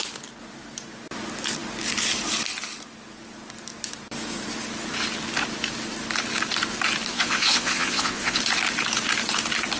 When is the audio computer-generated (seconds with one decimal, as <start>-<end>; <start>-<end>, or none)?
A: 7.1-8.4